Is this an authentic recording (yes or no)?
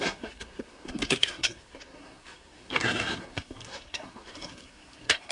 no